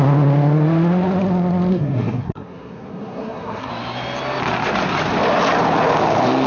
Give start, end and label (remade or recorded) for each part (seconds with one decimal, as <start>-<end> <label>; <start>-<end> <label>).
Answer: 0.0-1.7 recorded; 1.7-3.7 remade; 3.7-6.5 recorded